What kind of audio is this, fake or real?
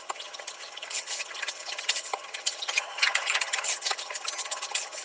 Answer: fake